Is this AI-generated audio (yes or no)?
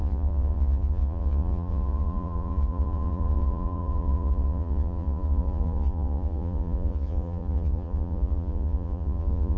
yes